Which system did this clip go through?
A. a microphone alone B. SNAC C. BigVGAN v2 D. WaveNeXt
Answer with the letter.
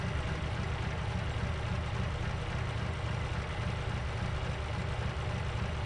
A